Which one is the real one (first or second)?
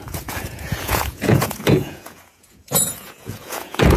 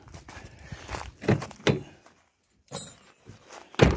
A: second